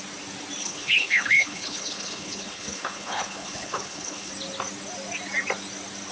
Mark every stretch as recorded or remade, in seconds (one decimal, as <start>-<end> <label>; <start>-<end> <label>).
0.0-0.6 recorded; 0.6-4.3 remade; 4.3-6.1 recorded